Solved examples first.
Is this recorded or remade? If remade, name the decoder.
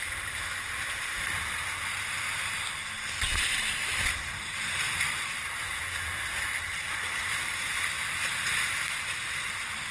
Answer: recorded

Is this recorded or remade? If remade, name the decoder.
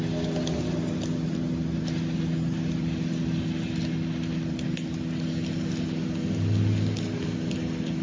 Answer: recorded